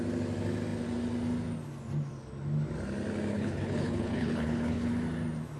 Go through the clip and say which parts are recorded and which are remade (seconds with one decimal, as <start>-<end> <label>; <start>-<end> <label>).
0.0-3.3 recorded; 3.3-4.9 remade; 4.9-5.6 recorded